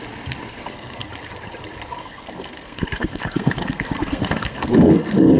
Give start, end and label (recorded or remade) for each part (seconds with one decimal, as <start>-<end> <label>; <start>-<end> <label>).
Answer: 0.0-0.5 recorded; 0.5-1.1 remade; 1.1-2.0 recorded; 2.0-5.4 remade